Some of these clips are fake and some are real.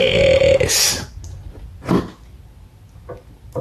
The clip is real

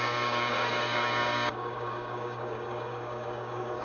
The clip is fake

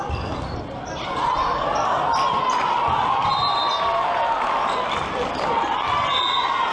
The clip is real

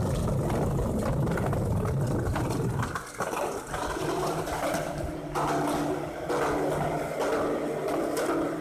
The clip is real